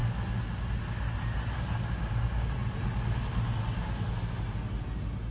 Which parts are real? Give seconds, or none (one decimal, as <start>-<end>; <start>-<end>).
0.0-5.3